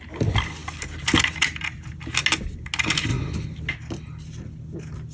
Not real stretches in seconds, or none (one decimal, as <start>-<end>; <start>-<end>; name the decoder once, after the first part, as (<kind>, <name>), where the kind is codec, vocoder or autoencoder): none